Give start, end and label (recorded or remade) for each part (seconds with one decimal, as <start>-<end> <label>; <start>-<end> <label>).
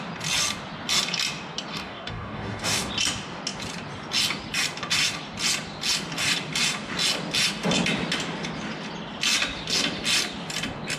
0.0-1.7 recorded; 1.7-2.9 remade; 2.9-11.0 recorded